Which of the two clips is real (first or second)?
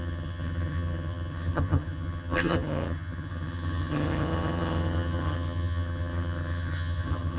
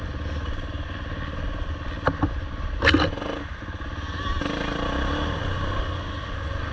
second